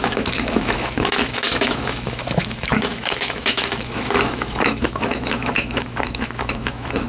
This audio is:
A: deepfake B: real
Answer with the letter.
A